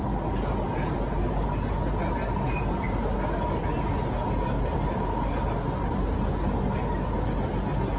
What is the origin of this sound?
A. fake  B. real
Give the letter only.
B